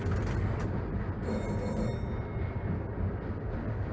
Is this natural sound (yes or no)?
yes